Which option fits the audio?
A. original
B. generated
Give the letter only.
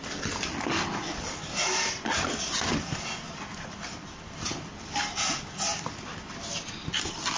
A